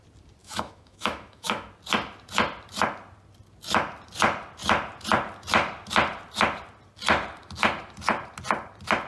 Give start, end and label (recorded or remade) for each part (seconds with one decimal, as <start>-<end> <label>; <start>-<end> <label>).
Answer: 0.0-0.4 recorded; 0.4-1.7 remade; 1.7-9.1 recorded